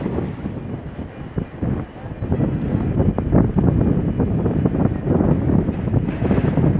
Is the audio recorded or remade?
recorded